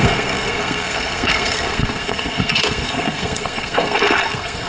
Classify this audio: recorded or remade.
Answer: remade